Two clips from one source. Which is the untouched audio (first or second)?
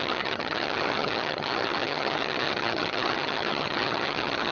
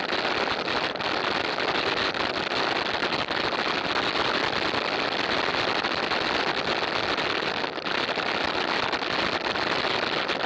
second